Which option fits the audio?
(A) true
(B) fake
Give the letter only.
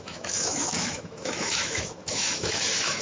B